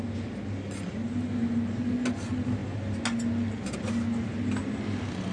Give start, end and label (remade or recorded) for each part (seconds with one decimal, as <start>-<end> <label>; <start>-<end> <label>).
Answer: 0.0-5.3 recorded